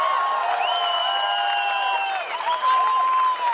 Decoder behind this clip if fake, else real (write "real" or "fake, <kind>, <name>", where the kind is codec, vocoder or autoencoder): real